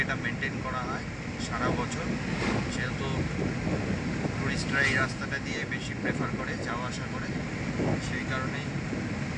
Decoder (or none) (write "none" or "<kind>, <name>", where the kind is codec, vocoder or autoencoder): none